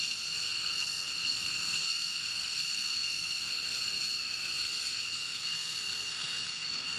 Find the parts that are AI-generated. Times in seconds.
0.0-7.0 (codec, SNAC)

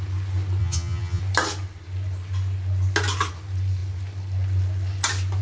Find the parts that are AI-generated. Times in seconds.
0.6-1.2 (vocoder, HiFi-GAN)